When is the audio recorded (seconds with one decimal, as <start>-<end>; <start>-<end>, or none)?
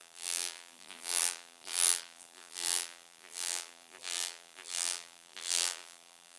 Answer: none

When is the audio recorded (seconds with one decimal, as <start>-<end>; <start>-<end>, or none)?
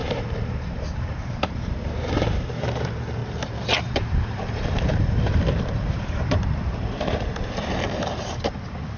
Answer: 3.2-3.8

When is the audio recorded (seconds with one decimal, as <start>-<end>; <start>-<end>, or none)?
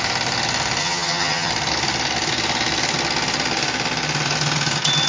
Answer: 0.0-0.8; 1.5-5.1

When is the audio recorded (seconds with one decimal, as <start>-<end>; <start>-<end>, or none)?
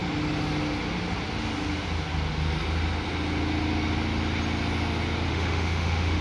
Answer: 0.0-5.3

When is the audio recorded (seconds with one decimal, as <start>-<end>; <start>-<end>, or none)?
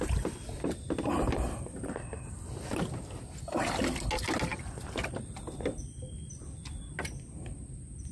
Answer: 0.0-8.1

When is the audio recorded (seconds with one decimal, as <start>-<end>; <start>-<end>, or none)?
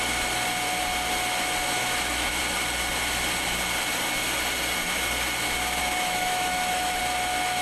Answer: 0.0-1.8; 2.4-5.8; 7.0-7.6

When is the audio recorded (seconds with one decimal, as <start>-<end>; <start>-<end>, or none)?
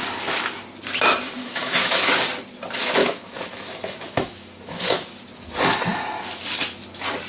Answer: 0.0-1.4; 2.1-3.0; 5.1-7.3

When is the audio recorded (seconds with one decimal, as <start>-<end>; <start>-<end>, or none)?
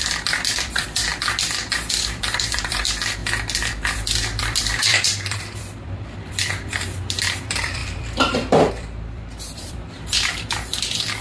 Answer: 1.1-1.6; 3.2-4.4